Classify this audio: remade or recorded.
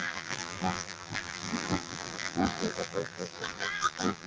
remade